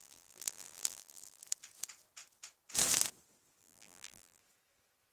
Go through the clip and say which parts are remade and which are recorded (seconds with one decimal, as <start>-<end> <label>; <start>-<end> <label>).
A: 0.0-1.4 remade; 1.4-3.6 recorded; 3.6-4.4 remade; 4.4-5.1 recorded